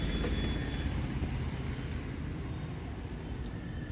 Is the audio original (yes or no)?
yes